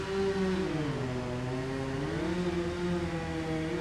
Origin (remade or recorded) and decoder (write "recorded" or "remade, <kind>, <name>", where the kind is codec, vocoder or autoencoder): recorded